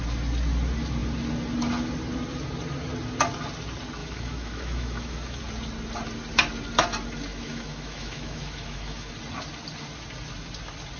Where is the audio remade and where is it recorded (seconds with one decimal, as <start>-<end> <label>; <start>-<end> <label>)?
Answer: 0.0-4.0 recorded; 4.0-5.4 remade; 5.4-7.3 recorded; 7.3-9.1 remade; 9.1-11.0 recorded